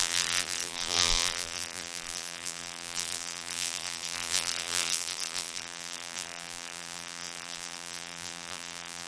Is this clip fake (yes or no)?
yes